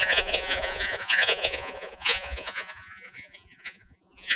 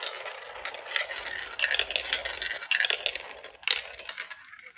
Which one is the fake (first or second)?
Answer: first